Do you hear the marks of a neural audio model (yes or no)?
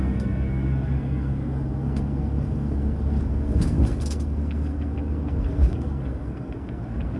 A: yes